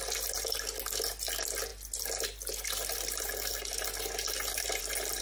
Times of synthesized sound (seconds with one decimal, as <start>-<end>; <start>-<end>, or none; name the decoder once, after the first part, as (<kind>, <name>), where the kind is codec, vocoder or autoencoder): none